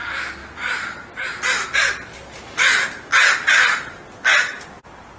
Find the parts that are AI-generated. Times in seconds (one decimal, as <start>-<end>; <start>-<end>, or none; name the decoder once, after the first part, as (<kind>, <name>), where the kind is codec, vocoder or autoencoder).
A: none